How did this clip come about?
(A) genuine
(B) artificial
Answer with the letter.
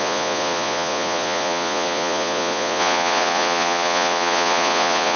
B